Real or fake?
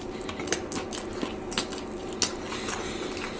real